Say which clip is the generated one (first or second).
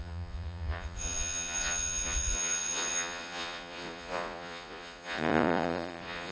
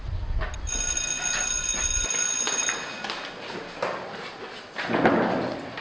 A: first